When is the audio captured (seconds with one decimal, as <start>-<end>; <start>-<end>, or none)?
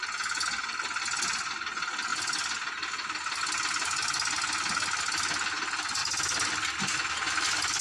0.0-7.8